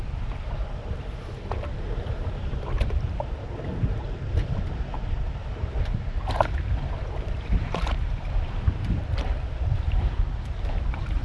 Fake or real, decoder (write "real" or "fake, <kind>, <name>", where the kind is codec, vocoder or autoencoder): fake, vocoder, BigVGAN v2